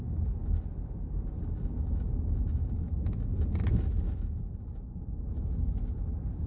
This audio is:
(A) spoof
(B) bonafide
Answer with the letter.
B